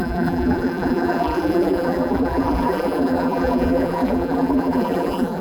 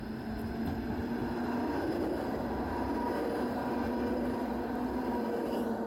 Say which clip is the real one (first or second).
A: second